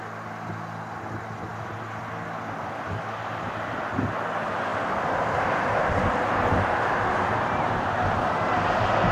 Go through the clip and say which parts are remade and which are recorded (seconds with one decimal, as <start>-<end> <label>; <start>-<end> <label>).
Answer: 0.0-4.7 recorded; 4.7-6.0 remade; 6.0-9.1 recorded